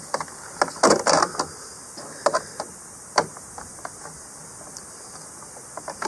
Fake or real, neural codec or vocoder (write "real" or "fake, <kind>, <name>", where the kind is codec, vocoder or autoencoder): real